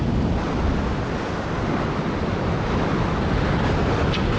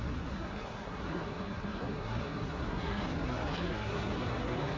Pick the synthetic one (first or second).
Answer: second